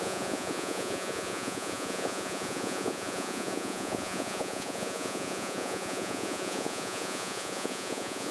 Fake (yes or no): yes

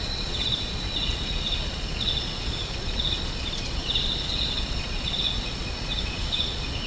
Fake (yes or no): yes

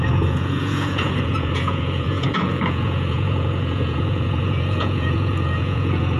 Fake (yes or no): yes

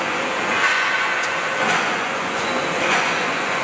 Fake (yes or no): yes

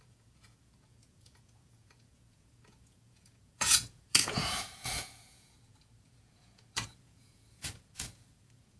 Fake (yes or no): yes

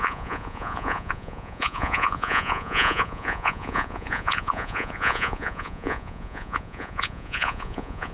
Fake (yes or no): yes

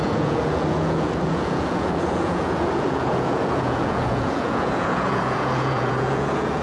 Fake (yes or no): yes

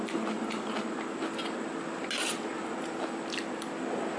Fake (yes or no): no